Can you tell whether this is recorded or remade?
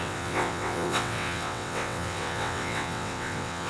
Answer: remade